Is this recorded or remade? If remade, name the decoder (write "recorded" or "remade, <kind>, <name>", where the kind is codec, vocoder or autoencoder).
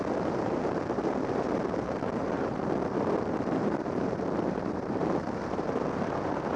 remade, vocoder, BigVGAN v2